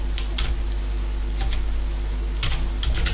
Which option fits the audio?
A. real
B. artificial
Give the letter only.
A